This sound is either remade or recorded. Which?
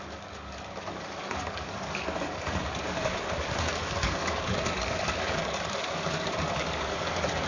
remade